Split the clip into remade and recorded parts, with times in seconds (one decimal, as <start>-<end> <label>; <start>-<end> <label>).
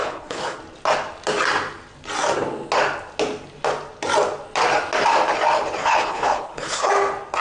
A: 0.0-0.6 remade; 0.6-5.8 recorded; 5.8-6.9 remade; 6.9-7.4 recorded